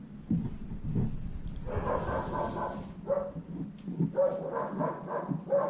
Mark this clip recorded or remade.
recorded